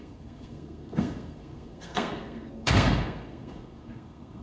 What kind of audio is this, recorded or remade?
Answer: remade